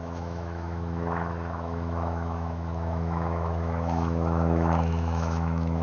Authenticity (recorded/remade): remade